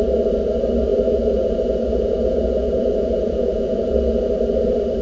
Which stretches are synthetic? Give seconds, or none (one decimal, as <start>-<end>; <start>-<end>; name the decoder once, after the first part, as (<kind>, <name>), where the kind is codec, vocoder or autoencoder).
0.9-3.9 (vocoder, Vocos)